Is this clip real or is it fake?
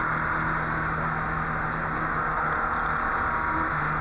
real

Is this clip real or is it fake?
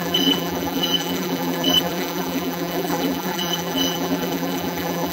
fake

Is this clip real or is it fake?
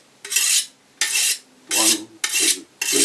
real